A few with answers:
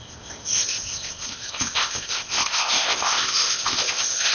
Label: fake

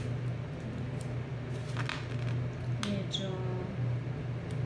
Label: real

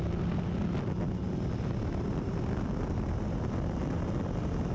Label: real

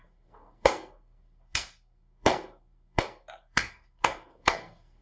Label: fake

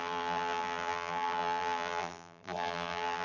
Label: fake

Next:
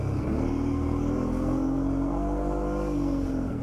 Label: fake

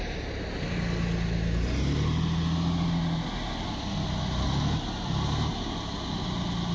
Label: real